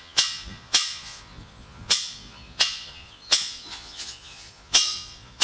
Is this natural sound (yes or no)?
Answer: no